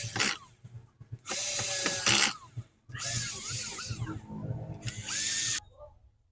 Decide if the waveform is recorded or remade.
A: recorded